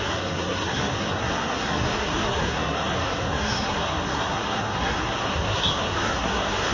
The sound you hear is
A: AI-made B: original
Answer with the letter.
A